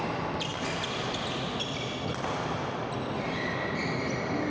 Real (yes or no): yes